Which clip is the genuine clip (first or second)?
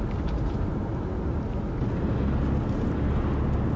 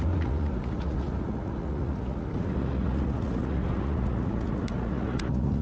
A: first